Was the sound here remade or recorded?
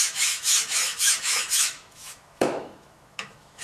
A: remade